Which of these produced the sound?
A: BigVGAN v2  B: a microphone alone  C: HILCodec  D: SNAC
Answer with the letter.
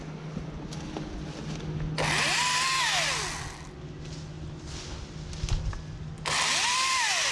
B